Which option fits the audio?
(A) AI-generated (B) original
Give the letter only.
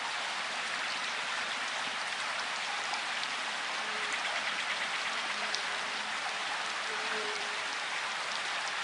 A